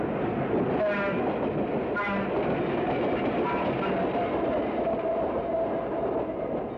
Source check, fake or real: real